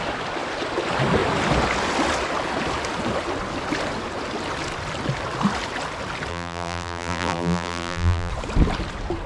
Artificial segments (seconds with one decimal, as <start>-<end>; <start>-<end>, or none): 6.3-8.3